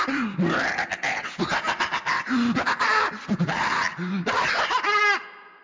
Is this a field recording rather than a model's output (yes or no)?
yes